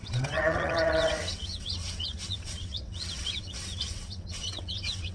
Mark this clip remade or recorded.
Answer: remade